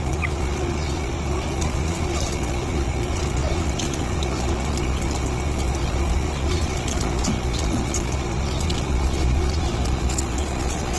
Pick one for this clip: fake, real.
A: fake